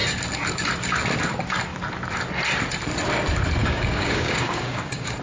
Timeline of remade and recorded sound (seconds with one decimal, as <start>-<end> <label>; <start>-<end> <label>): 0.0-3.6 recorded; 3.6-5.2 remade